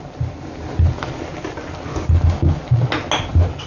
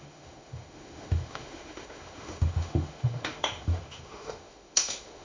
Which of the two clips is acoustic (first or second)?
first